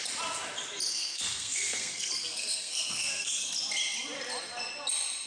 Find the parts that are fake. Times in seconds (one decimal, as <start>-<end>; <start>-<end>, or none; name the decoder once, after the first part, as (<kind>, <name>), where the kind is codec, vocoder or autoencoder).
0.9-3.5 (codec, SNAC)